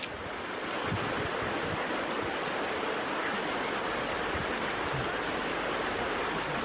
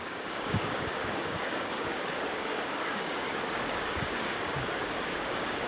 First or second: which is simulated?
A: second